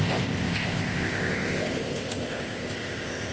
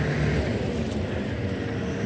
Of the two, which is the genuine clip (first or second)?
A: second